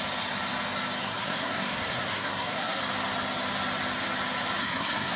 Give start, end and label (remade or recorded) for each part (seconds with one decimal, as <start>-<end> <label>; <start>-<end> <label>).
0.0-1.0 recorded; 1.0-2.8 remade; 2.8-4.6 recorded; 4.6-5.2 remade